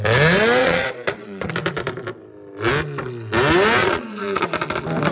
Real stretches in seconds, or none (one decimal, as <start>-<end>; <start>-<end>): 0.0-0.6; 1.5-3.8; 4.6-5.1